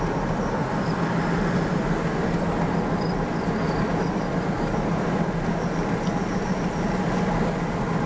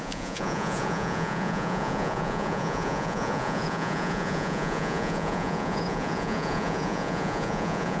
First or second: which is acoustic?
first